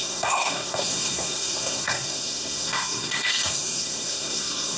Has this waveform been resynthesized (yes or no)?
yes